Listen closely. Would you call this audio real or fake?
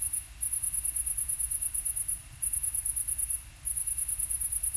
real